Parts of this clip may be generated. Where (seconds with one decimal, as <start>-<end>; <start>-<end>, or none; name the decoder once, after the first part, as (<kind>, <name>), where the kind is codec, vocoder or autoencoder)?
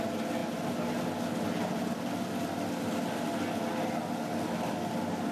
none